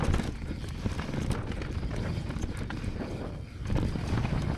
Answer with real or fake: real